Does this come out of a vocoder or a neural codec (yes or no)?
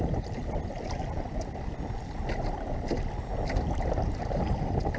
no